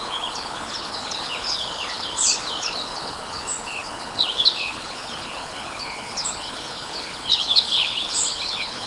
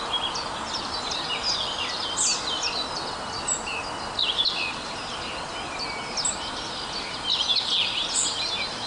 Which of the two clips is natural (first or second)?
second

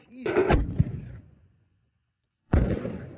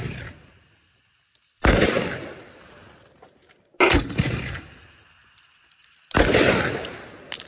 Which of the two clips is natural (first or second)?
second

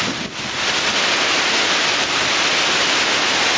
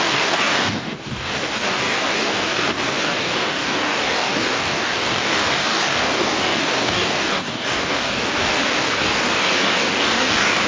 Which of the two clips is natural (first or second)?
first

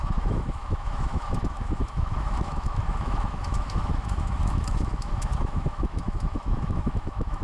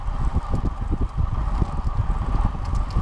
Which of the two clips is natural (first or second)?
second